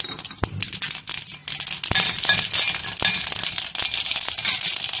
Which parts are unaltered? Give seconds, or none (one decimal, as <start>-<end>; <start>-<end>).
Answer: 0.0-5.0